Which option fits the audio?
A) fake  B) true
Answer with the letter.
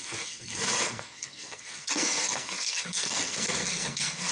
A